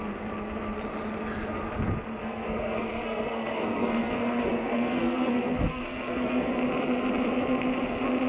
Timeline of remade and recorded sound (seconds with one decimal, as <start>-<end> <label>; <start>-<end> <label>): 0.0-2.2 recorded; 2.2-6.5 remade; 6.5-8.3 recorded

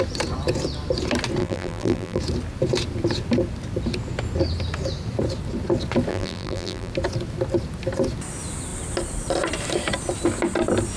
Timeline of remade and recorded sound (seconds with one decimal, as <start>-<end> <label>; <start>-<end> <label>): 0.0-1.4 recorded; 1.4-2.2 remade; 2.2-6.1 recorded; 6.1-6.9 remade; 6.9-11.0 recorded

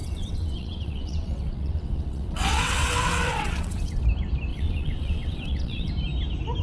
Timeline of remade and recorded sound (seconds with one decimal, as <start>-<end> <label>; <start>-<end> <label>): 0.0-4.0 remade; 4.0-4.5 recorded; 4.5-5.9 remade; 5.9-6.6 recorded

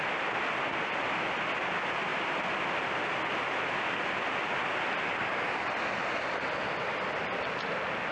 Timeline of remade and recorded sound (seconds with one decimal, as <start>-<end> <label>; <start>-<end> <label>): 0.0-8.1 recorded

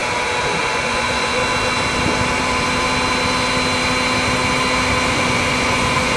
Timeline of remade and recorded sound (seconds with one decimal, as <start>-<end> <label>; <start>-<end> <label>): 0.0-0.6 recorded; 0.6-1.4 remade; 1.4-5.1 recorded; 5.1-6.2 remade

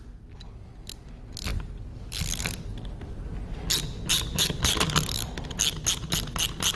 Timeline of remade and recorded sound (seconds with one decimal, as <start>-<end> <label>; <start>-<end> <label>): 0.0-4.1 recorded; 4.1-5.6 remade; 5.6-6.8 recorded